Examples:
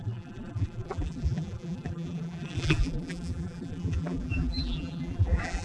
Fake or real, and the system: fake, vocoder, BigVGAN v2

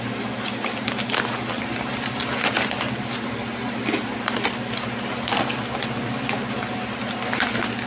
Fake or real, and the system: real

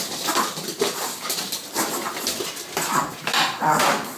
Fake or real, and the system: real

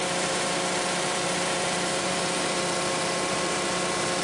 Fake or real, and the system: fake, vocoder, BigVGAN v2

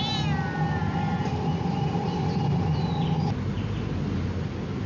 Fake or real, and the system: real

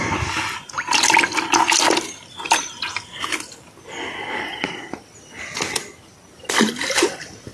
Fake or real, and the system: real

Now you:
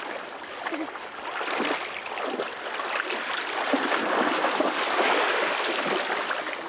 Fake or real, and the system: real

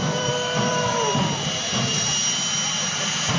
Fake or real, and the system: fake, vocoder, BigVGAN v2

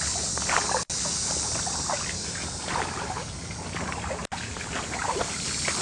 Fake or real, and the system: real